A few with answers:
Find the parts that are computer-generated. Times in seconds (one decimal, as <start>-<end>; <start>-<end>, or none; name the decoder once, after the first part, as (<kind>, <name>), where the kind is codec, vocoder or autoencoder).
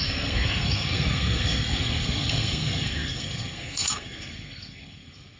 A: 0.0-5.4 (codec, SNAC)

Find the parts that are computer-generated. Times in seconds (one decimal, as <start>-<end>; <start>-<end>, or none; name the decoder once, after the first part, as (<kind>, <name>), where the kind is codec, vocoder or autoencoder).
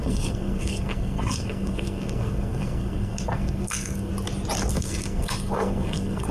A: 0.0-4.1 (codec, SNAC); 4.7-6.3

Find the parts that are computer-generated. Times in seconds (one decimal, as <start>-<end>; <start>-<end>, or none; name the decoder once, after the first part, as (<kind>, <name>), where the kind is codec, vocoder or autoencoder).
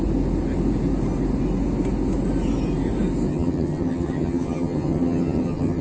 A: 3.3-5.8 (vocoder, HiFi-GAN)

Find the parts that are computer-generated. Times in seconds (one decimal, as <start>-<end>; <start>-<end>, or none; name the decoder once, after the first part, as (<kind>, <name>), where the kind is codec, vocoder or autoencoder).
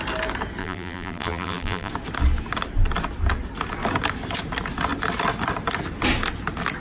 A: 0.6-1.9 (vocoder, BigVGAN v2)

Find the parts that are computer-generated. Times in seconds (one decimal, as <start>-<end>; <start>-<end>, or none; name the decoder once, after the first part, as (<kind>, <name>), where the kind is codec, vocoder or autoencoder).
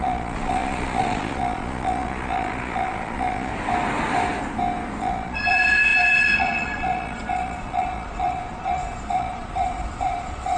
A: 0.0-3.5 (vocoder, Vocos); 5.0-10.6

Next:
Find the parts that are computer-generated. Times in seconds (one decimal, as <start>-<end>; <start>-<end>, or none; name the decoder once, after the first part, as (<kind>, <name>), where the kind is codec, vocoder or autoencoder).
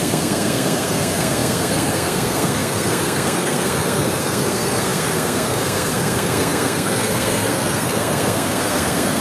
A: 0.0-9.2 (codec, SNAC)